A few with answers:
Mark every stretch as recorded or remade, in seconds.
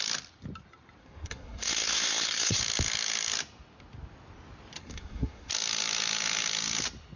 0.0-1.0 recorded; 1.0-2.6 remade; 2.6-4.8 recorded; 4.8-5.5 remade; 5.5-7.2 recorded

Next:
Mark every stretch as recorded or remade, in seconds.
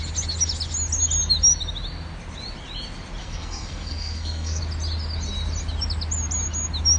0.0-3.2 recorded; 3.2-4.6 remade; 4.6-7.0 recorded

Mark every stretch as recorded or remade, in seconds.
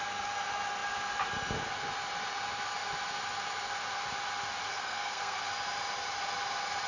0.0-4.7 recorded; 4.7-5.4 remade; 5.4-6.9 recorded